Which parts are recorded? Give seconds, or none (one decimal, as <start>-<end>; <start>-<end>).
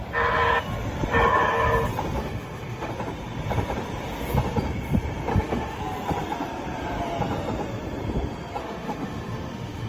0.0-2.2; 2.9-5.3; 5.8-8.6